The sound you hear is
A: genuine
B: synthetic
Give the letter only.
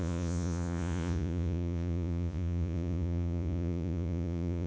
B